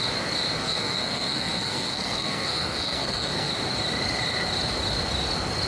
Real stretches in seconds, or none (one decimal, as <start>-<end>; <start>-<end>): 0.0-0.6; 3.5-5.7